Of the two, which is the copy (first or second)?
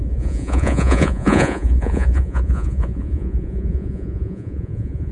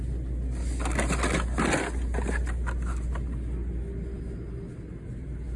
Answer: first